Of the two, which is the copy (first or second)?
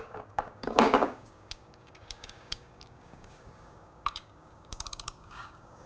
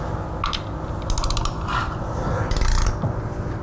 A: first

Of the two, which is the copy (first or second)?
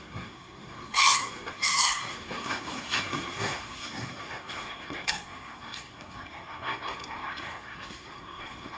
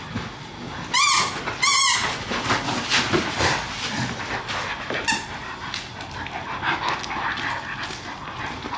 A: first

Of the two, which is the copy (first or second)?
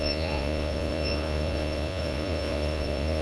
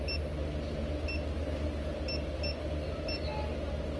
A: first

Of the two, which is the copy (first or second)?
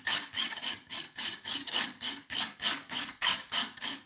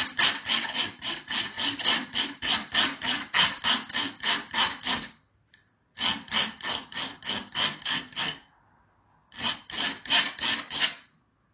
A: first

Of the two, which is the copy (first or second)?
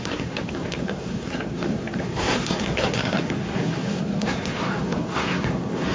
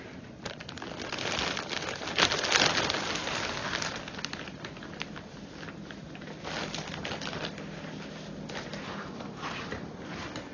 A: first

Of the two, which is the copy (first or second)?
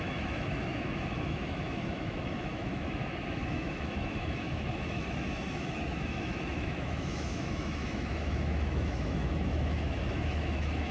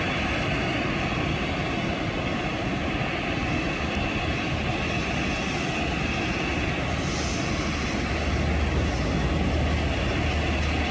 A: first